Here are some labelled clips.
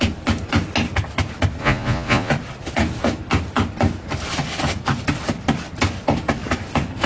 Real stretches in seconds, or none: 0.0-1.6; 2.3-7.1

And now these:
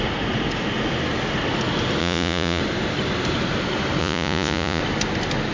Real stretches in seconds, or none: 0.0-2.0; 2.6-4.0; 4.8-5.5

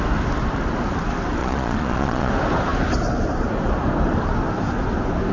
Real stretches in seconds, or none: 0.0-1.4; 2.3-5.3

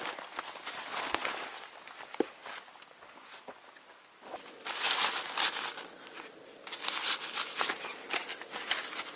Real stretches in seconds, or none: 0.0-9.2

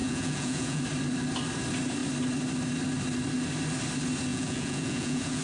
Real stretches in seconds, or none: 0.8-4.3

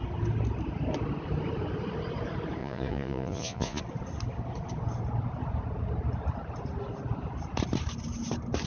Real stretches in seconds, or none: 0.0-2.6; 3.8-8.7